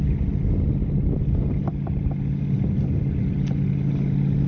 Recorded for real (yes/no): yes